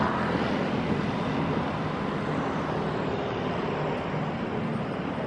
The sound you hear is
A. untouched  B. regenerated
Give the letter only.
A